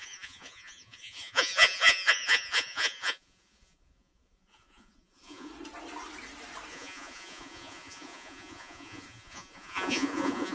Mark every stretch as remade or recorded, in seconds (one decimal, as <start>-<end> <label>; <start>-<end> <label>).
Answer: 0.0-5.5 remade; 5.5-6.7 recorded; 6.7-10.5 remade